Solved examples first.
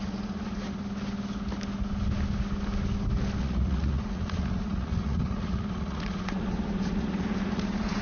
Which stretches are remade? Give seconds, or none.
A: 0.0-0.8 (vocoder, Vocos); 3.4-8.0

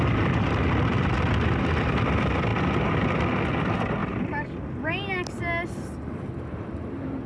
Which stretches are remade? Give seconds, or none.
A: none

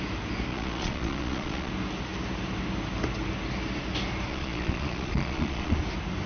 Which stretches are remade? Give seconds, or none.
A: 0.5-1.7 (vocoder, Vocos); 4.3-5.8

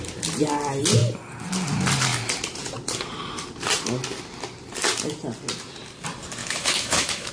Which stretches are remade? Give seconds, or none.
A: 6.4-7.3 (autoencoder, DAC-VAE)